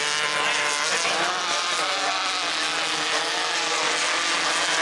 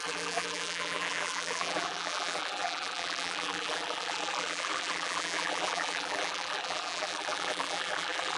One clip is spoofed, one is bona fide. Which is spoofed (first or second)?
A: second